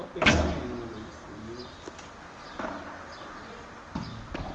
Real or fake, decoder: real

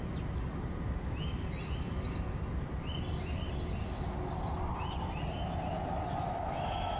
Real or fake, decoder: real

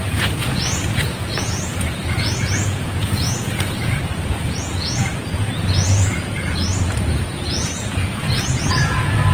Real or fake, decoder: fake, vocoder, Vocos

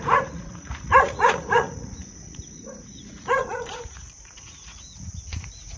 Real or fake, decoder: fake, vocoder, Vocos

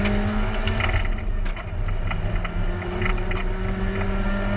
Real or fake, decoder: real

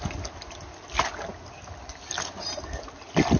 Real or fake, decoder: real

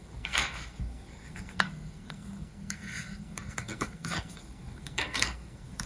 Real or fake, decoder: fake, codec, SNAC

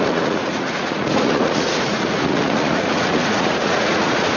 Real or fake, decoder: fake, vocoder, Vocos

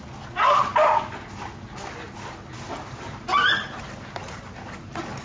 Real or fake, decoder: real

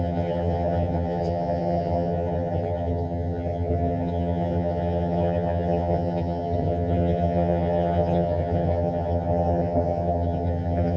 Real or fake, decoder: fake, vocoder, HiFi-GAN